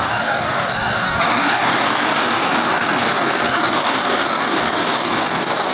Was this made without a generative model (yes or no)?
no